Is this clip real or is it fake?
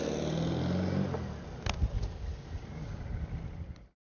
real